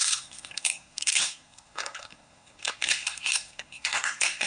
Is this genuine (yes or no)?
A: no